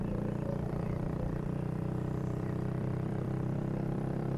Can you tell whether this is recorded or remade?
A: remade